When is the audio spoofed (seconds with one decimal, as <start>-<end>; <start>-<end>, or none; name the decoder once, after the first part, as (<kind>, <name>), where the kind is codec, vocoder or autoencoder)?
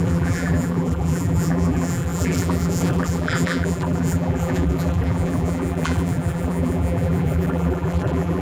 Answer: 0.0-8.4 (vocoder, BigVGAN v2)